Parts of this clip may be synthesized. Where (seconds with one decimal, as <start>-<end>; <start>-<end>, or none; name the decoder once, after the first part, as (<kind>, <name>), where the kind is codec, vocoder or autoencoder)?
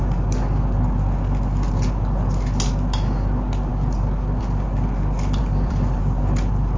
5.4-6.0 (vocoder, BigVGAN v2)